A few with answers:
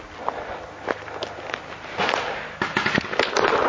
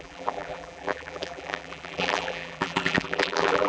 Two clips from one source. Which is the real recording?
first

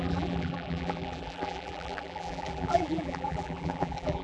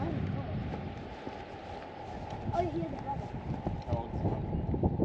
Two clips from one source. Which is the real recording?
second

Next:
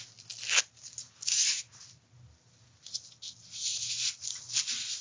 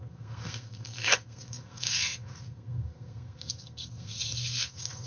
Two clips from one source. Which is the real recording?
first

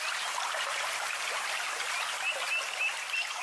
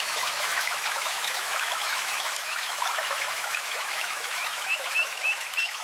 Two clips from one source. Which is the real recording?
first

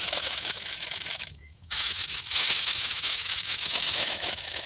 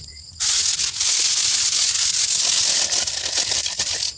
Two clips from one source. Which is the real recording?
second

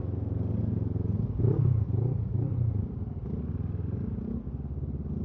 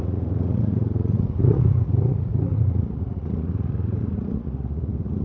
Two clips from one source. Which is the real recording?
first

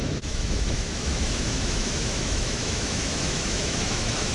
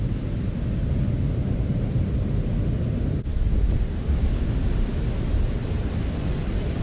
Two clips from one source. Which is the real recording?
second